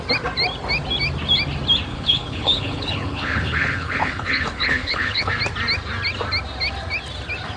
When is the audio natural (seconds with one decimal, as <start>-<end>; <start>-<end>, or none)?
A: 0.0-1.9; 5.3-7.6